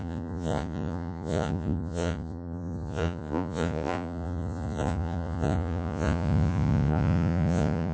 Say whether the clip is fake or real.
fake